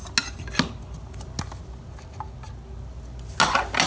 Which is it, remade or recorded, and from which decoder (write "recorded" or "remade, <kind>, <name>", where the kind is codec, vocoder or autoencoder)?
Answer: recorded